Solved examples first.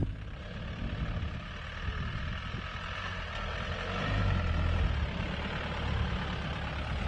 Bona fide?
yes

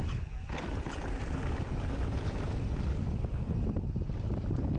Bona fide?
yes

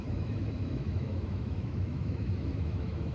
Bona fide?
no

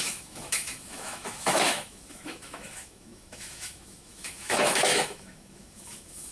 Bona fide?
no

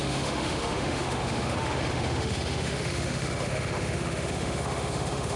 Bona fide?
no